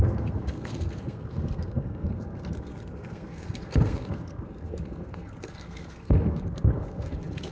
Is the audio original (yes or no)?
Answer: no